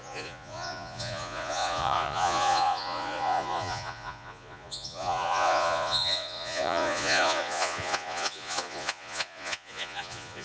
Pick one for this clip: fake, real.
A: fake